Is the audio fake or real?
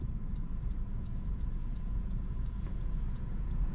fake